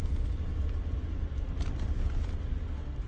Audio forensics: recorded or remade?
recorded